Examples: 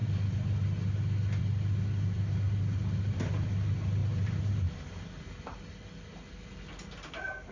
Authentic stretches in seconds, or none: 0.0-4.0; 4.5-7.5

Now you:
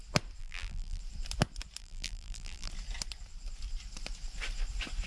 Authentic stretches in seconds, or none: 0.0-0.4; 1.0-1.8; 2.7-5.1